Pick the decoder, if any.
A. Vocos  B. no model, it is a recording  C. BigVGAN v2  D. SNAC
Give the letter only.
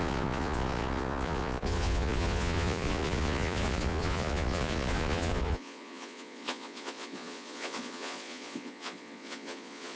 A